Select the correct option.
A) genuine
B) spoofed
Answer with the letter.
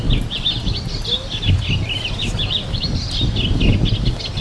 A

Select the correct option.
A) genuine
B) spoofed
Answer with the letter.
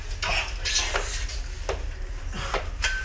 A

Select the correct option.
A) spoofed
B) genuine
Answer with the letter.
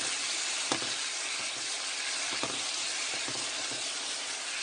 B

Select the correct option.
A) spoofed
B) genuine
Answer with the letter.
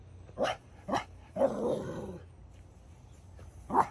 B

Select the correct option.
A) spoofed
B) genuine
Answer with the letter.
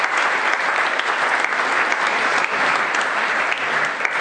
B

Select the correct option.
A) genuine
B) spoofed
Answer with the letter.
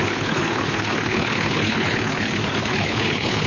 B